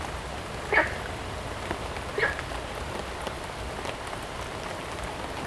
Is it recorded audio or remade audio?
recorded